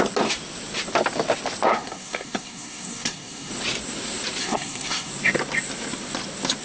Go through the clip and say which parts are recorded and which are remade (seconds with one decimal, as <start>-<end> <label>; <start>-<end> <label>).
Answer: 0.0-1.7 recorded; 1.7-3.5 remade; 3.5-4.4 recorded; 4.4-5.1 remade; 5.1-6.6 recorded